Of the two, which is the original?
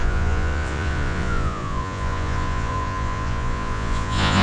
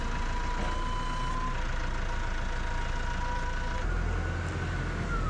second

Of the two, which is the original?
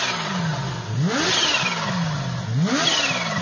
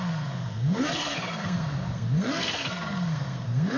first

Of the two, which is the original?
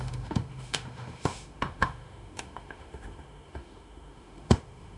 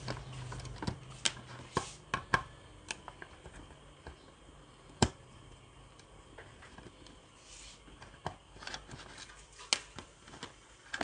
second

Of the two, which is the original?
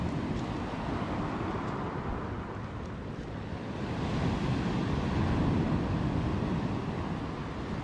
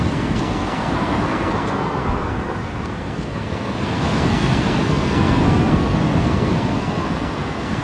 first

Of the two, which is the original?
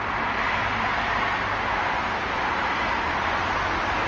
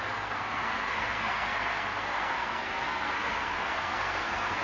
first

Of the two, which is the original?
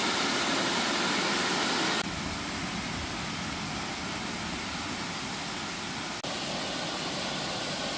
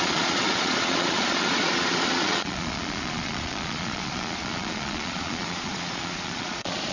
first